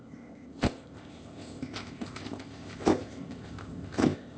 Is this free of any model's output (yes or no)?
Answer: no